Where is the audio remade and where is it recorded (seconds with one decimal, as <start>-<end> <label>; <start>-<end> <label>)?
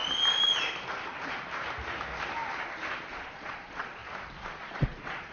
0.0-3.1 recorded; 3.1-4.0 remade; 4.0-4.6 recorded; 4.6-5.3 remade